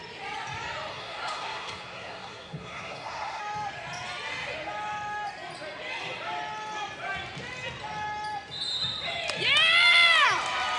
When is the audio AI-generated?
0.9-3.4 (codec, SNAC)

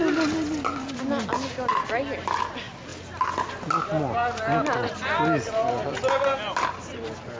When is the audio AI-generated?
none

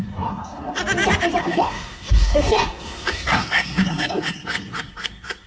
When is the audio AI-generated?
0.0-0.8 (codec, SNAC); 1.4-5.5

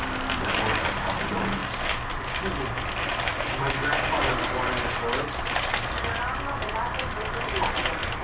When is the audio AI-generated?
none

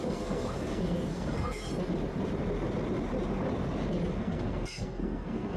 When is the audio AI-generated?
0.0-1.7 (codec, SNAC); 4.1-5.6

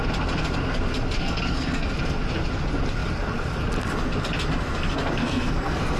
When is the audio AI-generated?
1.2-1.9 (codec, SNAC); 5.2-6.0

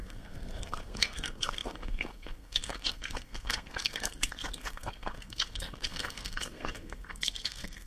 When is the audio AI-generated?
0.0-7.9 (codec, SNAC)